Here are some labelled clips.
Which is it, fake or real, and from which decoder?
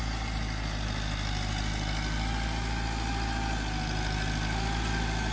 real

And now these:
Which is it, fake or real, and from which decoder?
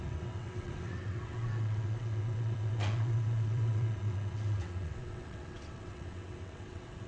fake, vocoder, WaveNeXt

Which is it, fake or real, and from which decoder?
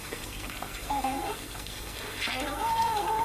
fake, codec, SNAC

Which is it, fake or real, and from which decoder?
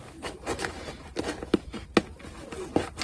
real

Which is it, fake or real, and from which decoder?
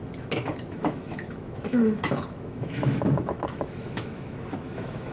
fake, autoencoder, DAC-VAE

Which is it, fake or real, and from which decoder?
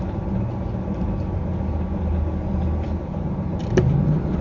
real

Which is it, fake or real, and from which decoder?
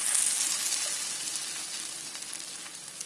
real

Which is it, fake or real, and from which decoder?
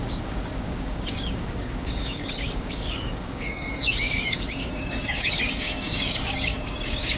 fake, codec, DAC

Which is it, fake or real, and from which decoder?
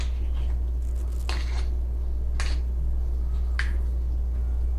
real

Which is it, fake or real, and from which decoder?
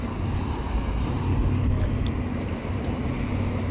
real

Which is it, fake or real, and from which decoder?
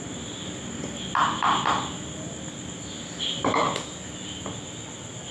real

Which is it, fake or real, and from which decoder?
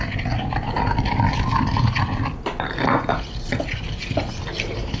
real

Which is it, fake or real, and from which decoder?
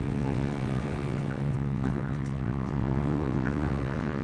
fake, vocoder, WaveNeXt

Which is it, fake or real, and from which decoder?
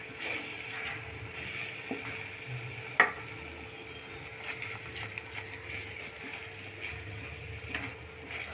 real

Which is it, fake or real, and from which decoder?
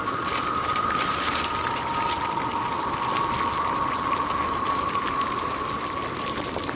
real